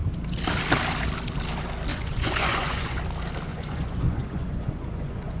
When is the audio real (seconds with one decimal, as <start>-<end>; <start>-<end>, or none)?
0.0-1.9; 3.0-3.5